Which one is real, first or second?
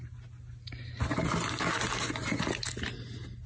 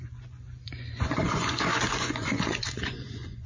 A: first